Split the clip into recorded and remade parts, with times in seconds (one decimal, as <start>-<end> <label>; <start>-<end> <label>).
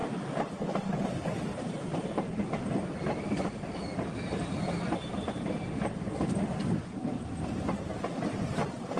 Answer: 0.0-1.4 recorded; 1.4-3.8 remade; 3.8-7.7 recorded; 7.7-9.0 remade